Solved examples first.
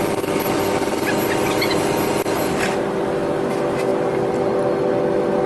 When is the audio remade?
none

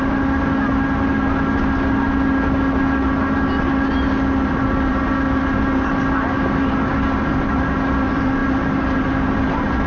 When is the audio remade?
none

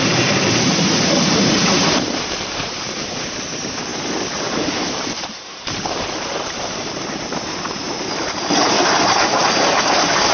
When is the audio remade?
0.0-10.3 (vocoder, BigVGAN v2)

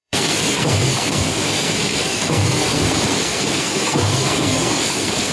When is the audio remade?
0.0-5.3 (codec, SNAC)

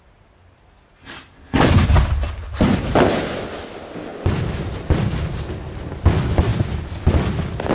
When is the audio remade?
none

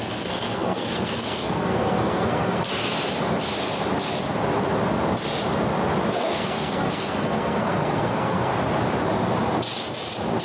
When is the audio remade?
0.0-2.7 (codec, SNAC); 6.2-8.5